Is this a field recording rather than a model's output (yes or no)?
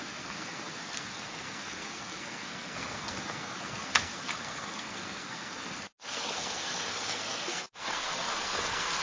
no